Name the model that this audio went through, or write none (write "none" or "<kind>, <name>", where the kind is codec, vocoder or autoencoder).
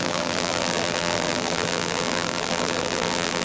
vocoder, BigVGAN v2